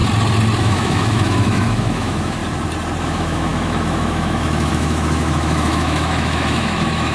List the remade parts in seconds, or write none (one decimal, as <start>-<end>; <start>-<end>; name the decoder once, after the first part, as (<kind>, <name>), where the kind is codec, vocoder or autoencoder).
0.6-2.4 (autoencoder, DAC-VAE); 3.0-7.1

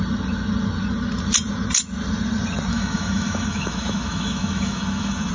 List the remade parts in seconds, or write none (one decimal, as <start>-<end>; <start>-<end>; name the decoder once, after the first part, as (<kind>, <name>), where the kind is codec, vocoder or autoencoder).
2.7-5.3 (autoencoder, DAC-VAE)

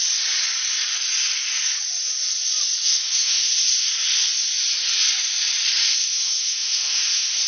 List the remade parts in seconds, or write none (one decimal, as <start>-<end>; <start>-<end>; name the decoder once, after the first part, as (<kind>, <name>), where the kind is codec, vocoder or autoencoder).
2.9-3.5 (autoencoder, DAC-VAE); 6.1-7.5

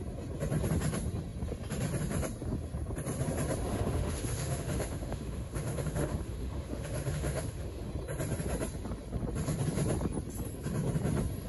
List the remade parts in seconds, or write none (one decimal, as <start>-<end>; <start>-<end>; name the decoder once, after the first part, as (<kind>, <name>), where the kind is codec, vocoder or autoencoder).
3.7-7.9 (autoencoder, DAC-VAE)

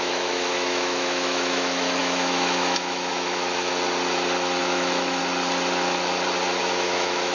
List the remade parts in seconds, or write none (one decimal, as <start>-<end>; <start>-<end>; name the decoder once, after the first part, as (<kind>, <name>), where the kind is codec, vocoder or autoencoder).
0.0-3.7 (autoencoder, DAC-VAE); 4.6-5.2; 6.6-7.3